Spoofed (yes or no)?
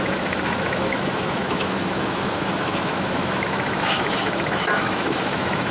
yes